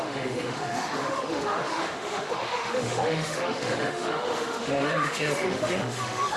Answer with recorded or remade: remade